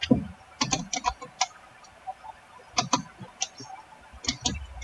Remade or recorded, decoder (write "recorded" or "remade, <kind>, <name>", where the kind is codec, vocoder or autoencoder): recorded